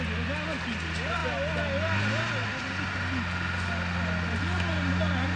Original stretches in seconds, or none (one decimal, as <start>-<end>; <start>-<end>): 0.0-5.4